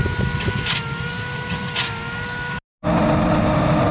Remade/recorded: recorded